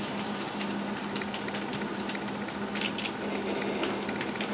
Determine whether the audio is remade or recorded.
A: recorded